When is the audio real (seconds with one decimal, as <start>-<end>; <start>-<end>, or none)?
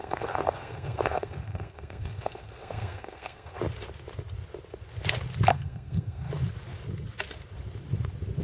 3.6-5.5; 6.3-8.4